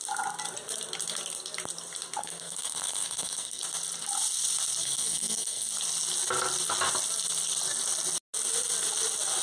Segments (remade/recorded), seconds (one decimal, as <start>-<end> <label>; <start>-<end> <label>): 0.0-2.2 recorded; 2.2-3.6 remade; 3.6-4.8 recorded; 4.8-5.7 remade; 5.7-9.4 recorded